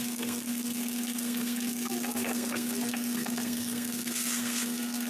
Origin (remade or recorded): remade